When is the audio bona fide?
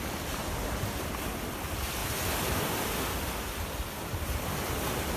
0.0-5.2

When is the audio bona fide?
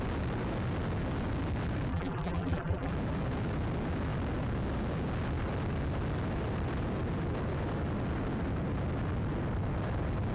0.0-1.9; 2.9-10.3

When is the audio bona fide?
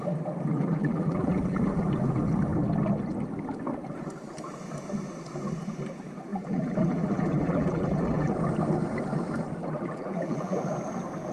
0.0-0.5; 1.9-6.3; 8.3-9.6; 10.6-11.3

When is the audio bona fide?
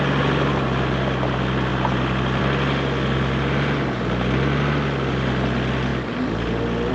0.0-6.9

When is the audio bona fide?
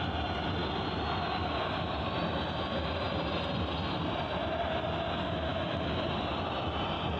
0.0-5.5; 6.3-7.2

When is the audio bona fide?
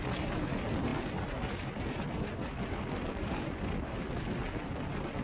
0.0-5.2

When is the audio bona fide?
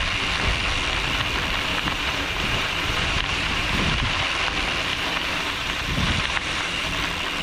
0.0-1.7; 4.2-4.9; 6.9-7.4